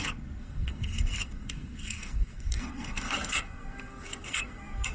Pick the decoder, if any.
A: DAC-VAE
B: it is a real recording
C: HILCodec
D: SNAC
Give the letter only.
D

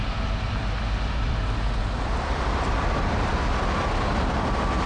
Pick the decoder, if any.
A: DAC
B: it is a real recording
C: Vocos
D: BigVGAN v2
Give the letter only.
D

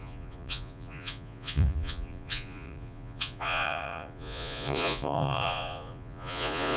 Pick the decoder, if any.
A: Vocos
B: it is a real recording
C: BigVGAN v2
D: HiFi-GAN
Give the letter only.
A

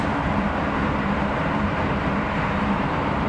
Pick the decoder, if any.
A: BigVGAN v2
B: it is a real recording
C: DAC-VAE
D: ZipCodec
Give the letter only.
A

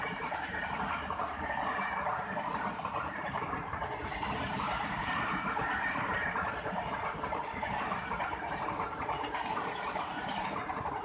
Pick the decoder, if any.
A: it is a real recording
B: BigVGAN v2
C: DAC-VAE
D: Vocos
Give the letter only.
B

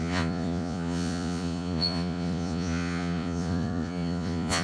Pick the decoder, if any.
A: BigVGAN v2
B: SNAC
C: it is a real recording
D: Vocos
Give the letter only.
D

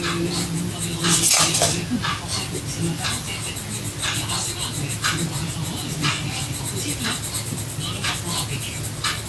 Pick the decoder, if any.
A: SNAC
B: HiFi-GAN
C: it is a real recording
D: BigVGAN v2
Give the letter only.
C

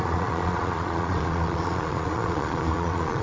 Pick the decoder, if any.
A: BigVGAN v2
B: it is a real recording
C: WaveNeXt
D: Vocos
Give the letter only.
D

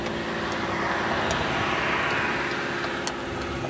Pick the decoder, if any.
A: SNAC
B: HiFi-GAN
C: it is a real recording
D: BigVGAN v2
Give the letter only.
C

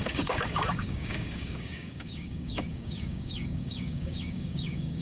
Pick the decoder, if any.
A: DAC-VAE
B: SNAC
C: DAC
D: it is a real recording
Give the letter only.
C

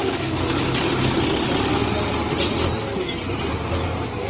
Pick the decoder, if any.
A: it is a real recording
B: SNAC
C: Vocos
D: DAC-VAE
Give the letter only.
A